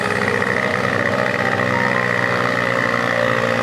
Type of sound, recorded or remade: recorded